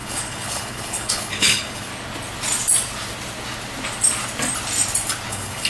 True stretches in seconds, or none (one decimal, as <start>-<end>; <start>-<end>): 1.9-5.3